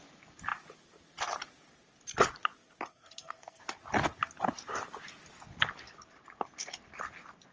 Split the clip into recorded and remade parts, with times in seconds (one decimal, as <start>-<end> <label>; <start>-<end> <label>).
0.0-2.9 recorded; 2.9-3.6 remade; 3.6-7.5 recorded